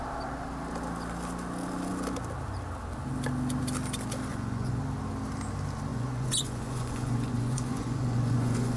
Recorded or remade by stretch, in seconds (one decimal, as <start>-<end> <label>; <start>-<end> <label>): 0.0-4.3 recorded; 4.3-4.8 remade; 4.8-5.9 recorded; 5.9-8.8 remade